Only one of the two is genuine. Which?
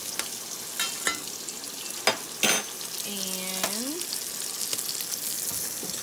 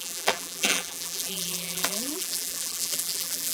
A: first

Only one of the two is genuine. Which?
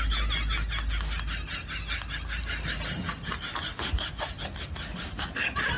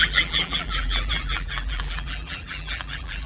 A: first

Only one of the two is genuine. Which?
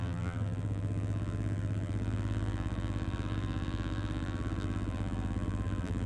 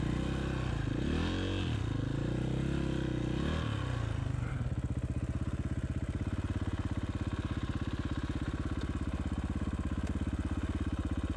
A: second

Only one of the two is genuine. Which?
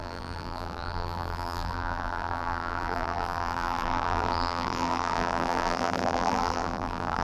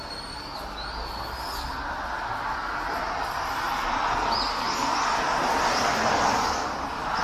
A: second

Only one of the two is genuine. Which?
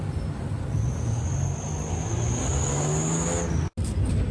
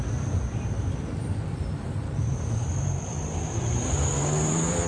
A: first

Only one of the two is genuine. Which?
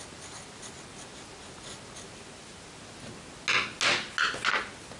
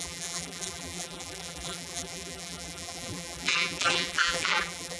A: first